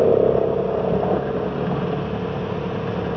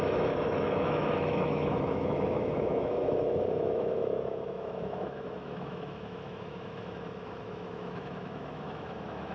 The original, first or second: first